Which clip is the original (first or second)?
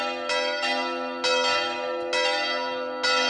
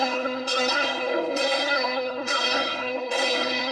first